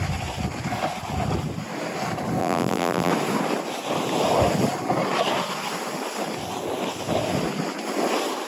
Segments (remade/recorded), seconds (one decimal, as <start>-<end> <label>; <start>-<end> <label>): 0.0-2.4 recorded; 2.4-3.1 remade; 3.1-8.5 recorded